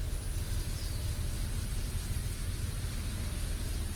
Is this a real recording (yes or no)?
no